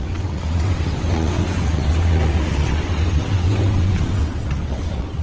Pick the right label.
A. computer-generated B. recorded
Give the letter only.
A